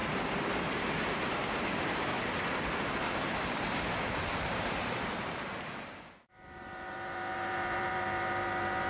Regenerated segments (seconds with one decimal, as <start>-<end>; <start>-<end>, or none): 0.6-2.1; 2.7-8.9